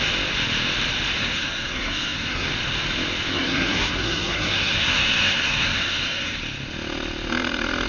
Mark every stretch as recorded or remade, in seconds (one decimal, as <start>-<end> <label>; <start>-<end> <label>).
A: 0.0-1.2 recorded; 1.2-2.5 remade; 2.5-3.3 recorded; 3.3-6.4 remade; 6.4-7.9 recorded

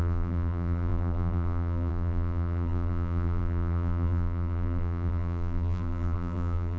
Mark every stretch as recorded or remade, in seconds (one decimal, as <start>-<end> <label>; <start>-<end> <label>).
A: 0.0-6.8 remade

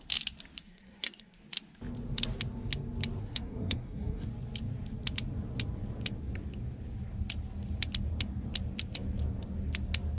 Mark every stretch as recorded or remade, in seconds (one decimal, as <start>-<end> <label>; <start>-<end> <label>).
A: 0.0-0.6 recorded; 0.6-1.4 remade; 1.4-3.2 recorded; 3.2-4.3 remade; 4.3-10.2 recorded